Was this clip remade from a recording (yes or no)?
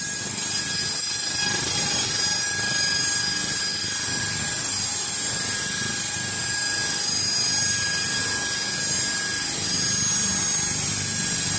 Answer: no